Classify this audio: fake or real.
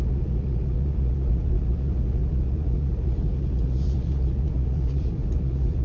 fake